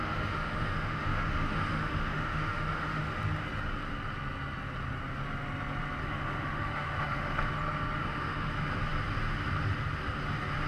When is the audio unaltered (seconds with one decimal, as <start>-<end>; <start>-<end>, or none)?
3.0-6.0; 7.4-8.0; 8.5-10.7